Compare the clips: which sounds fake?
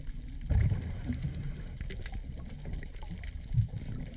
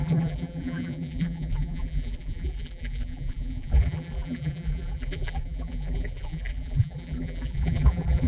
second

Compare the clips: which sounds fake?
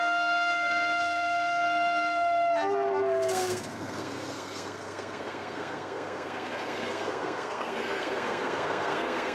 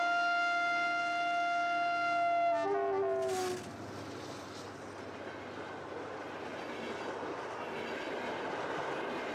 first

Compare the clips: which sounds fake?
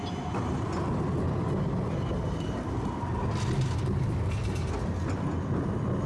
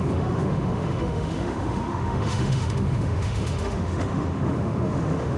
second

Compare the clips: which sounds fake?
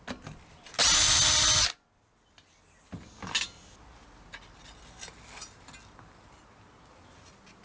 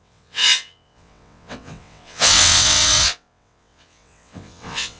second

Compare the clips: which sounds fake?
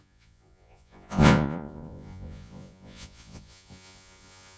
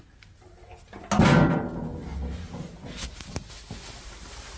first